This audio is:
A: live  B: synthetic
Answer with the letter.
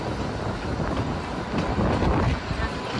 A